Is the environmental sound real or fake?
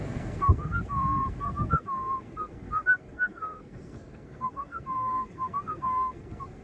fake